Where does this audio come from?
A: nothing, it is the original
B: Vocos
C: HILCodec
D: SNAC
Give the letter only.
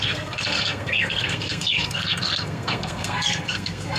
D